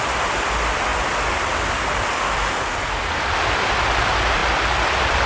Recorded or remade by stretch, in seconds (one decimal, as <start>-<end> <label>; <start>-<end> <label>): 0.0-5.3 recorded